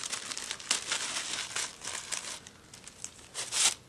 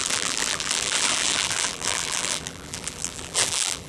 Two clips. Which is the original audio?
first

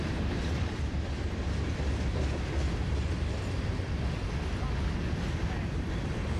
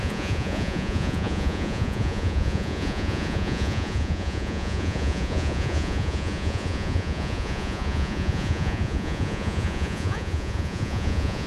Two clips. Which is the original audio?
first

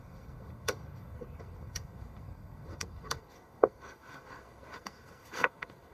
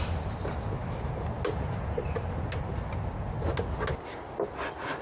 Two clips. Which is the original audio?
second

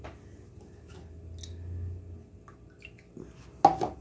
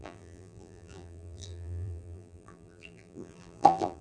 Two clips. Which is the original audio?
first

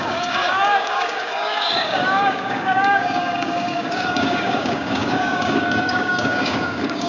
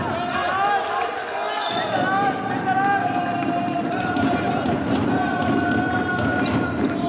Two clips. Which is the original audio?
second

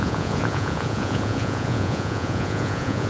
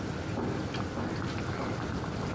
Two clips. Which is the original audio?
second